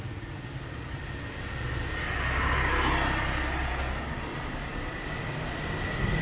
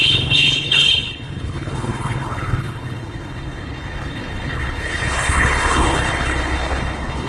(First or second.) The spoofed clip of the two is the second